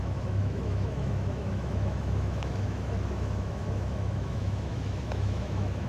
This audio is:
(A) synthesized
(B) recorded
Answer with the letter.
A